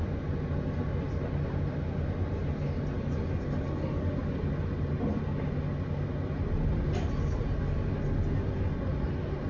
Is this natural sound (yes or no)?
yes